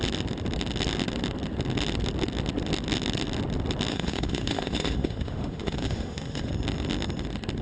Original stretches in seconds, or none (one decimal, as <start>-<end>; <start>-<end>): 0.0-3.9; 6.5-7.6